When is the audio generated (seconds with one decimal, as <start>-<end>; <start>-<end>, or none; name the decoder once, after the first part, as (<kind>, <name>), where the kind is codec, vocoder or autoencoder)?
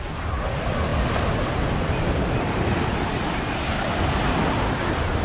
none